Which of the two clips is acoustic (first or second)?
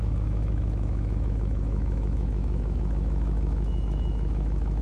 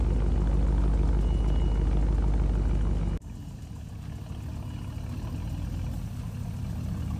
second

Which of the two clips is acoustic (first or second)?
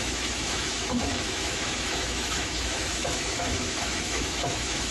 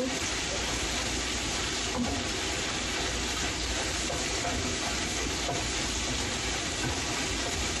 second